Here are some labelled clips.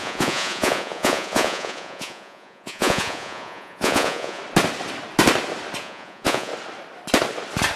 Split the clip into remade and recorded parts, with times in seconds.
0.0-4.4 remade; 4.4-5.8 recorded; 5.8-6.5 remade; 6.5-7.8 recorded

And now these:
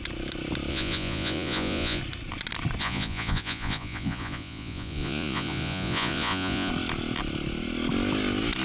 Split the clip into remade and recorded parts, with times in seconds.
0.0-0.7 recorded; 0.7-2.0 remade; 2.0-2.8 recorded; 2.8-6.7 remade; 6.7-8.6 recorded

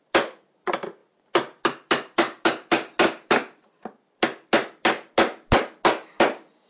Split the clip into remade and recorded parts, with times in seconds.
0.0-6.7 recorded

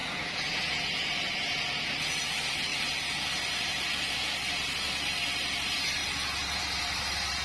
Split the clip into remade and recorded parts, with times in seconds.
0.0-2.3 remade; 2.3-6.0 recorded; 6.0-6.6 remade; 6.6-7.4 recorded

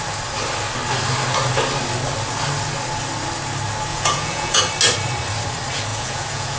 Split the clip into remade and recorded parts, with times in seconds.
0.0-3.9 recorded; 3.9-4.6 remade; 4.6-5.9 recorded; 5.9-6.6 remade